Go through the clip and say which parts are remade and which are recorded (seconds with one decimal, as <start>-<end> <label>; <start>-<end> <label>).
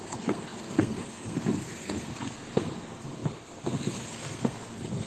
0.0-5.1 remade